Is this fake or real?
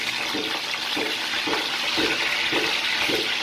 real